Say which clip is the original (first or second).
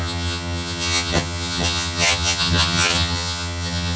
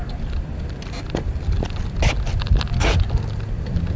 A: second